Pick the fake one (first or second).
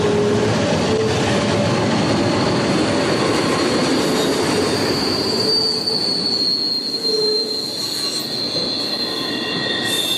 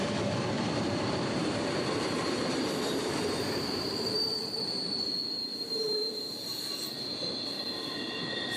second